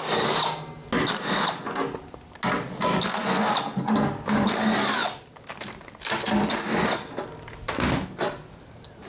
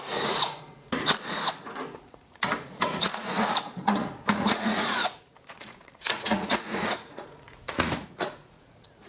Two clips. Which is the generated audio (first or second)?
second